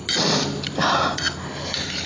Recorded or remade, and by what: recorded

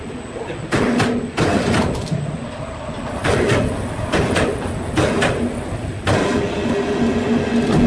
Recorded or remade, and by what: recorded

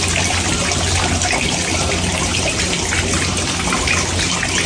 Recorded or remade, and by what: recorded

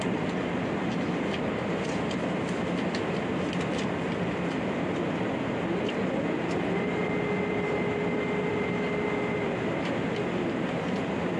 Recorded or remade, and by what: recorded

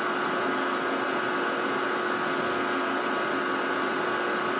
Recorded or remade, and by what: recorded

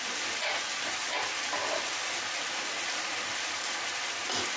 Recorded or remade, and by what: recorded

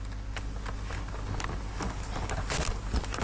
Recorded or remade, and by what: recorded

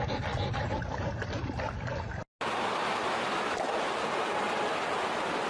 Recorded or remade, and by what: recorded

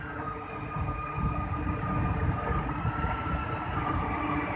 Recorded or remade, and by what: recorded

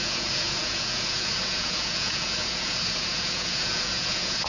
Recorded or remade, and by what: remade, vocoder, Vocos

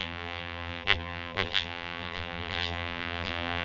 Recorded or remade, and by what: remade, vocoder, BigVGAN v2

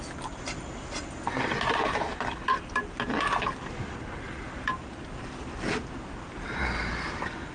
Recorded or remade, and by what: recorded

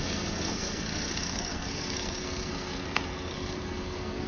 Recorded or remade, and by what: remade, codec, SNAC